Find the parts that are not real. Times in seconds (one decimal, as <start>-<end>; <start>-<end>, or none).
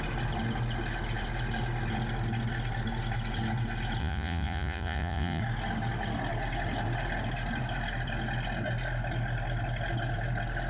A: 4.0-5.4